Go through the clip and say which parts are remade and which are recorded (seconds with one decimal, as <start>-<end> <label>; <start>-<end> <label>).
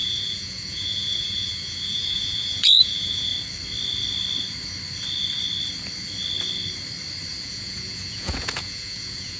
0.0-3.3 remade; 3.3-7.4 recorded; 7.4-9.4 remade